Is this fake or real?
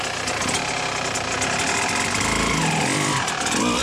real